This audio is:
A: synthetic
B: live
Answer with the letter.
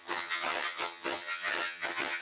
A